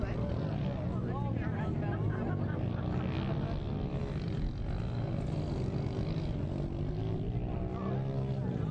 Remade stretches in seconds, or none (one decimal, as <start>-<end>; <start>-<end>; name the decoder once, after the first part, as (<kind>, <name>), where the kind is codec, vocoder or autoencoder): none